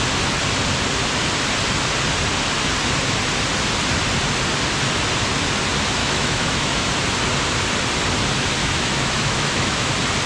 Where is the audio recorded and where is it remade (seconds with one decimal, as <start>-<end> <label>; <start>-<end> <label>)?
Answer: 0.0-6.0 recorded; 6.0-6.9 remade; 6.9-8.6 recorded; 8.6-9.9 remade; 9.9-10.3 recorded